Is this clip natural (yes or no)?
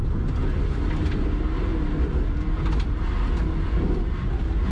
yes